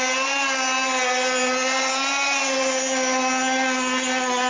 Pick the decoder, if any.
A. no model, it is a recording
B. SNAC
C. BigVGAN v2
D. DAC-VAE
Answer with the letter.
A